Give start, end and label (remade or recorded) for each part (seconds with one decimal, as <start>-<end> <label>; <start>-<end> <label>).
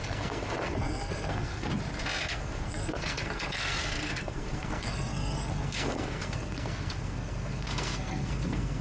0.0-1.7 remade; 1.7-2.2 recorded; 2.2-8.8 remade